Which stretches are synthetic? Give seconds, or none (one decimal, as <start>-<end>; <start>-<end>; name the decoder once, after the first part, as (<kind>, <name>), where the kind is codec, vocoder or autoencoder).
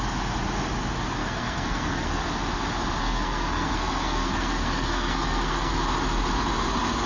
1.2-2.2 (codec, SNAC); 3.0-5.7